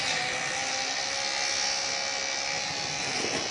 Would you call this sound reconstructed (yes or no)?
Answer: no